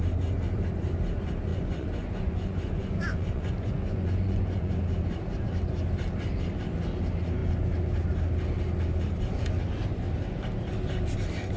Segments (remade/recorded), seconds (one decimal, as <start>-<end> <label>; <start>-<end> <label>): 0.0-1.5 recorded; 1.5-4.7 remade; 4.7-11.6 recorded